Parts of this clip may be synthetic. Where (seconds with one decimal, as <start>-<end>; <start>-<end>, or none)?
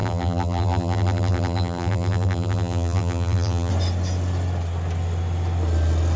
0.0-3.7